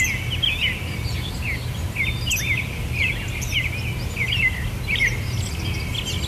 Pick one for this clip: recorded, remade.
recorded